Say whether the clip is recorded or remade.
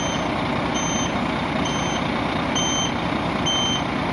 recorded